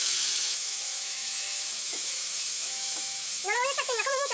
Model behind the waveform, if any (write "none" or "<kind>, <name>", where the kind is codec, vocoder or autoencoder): autoencoder, DAC-VAE